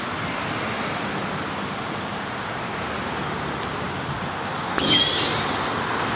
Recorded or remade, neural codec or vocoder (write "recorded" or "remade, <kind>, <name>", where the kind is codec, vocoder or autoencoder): recorded